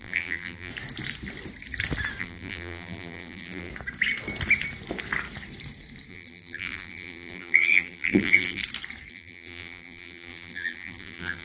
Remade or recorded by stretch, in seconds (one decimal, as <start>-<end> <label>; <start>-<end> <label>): 0.0-0.7 remade; 0.7-2.2 recorded; 2.2-3.7 remade; 3.7-6.1 recorded; 6.1-8.6 remade; 8.6-9.1 recorded; 9.1-11.4 remade